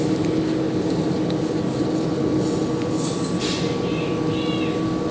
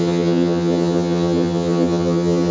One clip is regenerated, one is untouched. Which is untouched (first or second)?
first